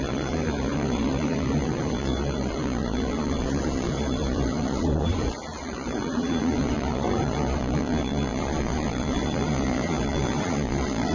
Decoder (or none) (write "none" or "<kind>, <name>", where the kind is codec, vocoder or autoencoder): vocoder, Vocos